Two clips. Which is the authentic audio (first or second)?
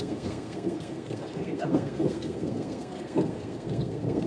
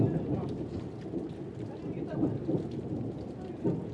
second